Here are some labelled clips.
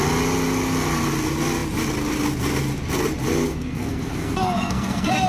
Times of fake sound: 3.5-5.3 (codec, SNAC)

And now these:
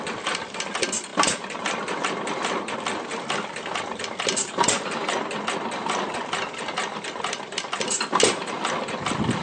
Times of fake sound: none